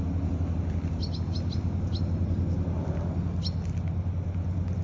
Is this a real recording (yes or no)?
yes